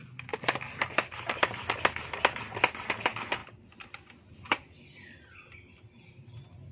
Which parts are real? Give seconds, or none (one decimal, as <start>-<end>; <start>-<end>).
0.0-3.4; 4.3-6.7